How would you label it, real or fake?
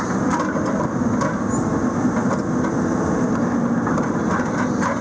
real